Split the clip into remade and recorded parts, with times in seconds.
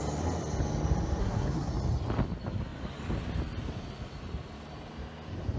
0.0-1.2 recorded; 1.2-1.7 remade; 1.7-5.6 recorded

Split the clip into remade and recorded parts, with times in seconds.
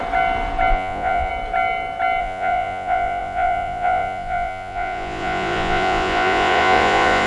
0.0-0.7 recorded; 0.7-1.3 remade; 1.3-2.2 recorded; 2.2-7.3 remade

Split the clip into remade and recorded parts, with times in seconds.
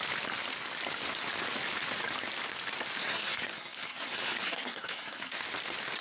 0.0-3.0 recorded; 3.0-5.4 remade; 5.4-6.0 recorded